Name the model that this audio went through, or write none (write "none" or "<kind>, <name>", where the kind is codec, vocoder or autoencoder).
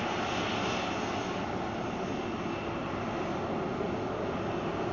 none